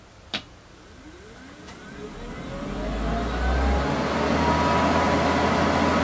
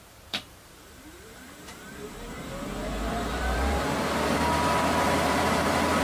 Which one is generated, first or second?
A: second